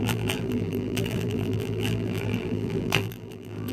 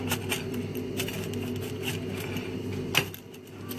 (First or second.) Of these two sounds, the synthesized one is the first